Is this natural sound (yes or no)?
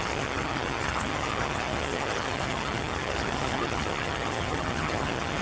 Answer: no